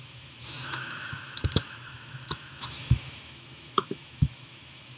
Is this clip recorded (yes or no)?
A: no